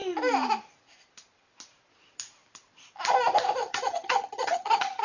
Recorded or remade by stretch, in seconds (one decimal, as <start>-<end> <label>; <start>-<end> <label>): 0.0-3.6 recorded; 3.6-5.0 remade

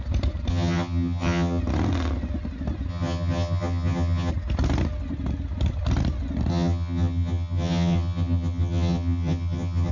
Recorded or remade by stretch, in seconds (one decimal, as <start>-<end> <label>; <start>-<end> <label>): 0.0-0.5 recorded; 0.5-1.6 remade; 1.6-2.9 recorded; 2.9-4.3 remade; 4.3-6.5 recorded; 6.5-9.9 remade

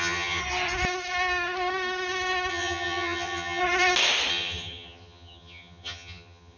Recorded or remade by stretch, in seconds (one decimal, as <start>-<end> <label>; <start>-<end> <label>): 0.0-0.4 remade; 0.4-2.5 recorded; 2.5-3.6 remade; 3.6-4.3 recorded; 4.3-6.6 remade